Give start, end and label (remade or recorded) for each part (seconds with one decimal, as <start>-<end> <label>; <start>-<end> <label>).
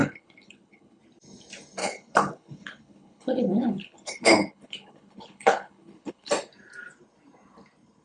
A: 0.0-1.0 remade; 1.0-1.8 recorded; 1.8-6.3 remade; 6.3-8.0 recorded